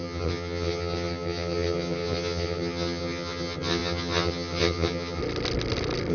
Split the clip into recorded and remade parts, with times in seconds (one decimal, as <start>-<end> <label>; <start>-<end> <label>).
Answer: 0.0-5.2 remade; 5.2-6.1 recorded